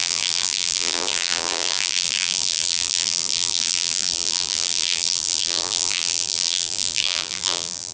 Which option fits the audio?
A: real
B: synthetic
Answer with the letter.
B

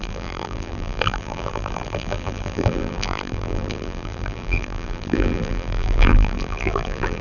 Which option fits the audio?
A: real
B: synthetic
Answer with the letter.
B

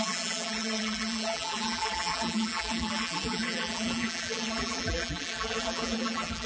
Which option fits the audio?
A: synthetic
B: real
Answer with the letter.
A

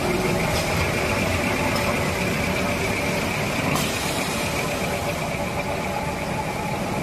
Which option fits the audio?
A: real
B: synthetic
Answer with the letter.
A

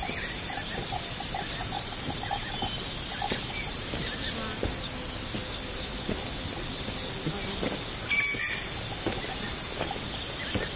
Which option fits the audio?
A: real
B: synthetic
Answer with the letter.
A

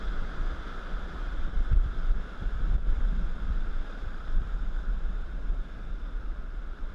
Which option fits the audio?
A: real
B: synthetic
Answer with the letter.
B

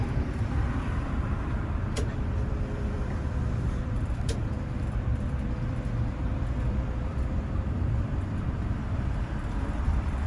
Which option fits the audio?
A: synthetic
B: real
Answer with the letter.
A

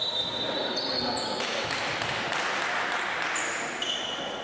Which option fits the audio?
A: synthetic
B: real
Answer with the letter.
B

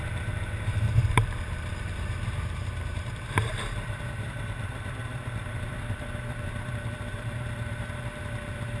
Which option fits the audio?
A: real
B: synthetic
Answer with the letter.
B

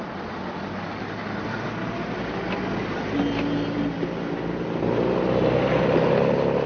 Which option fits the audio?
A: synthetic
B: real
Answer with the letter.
B